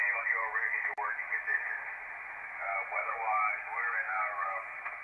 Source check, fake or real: real